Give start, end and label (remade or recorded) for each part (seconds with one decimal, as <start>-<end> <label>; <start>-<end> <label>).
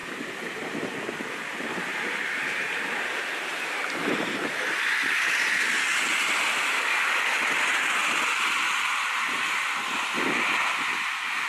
0.0-1.9 recorded; 1.9-4.5 remade; 4.5-11.5 recorded